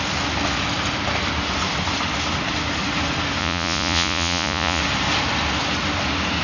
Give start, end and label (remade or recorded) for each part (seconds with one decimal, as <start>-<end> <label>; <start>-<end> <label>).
0.0-3.4 recorded; 3.4-4.8 remade; 4.8-6.4 recorded